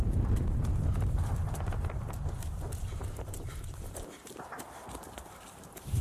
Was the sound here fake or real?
fake